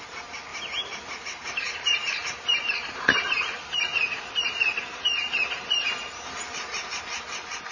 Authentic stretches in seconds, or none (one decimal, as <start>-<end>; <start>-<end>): 0.5-1.2